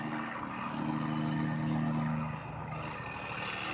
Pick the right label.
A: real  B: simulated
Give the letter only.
A